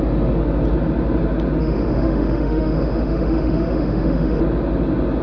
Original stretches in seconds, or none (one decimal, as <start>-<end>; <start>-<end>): 0.0-1.6; 4.4-5.2